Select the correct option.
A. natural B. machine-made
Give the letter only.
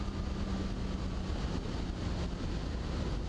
A